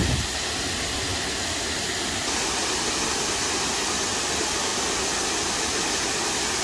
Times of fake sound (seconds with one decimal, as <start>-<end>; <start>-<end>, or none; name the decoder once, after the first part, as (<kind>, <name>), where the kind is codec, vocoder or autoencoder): none